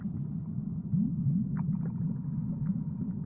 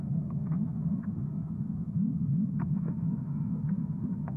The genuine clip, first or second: first